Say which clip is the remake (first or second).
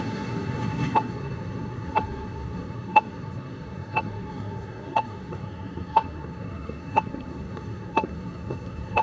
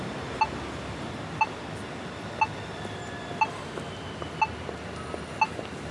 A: first